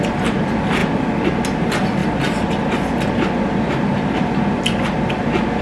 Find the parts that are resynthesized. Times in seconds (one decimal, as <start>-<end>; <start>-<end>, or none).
none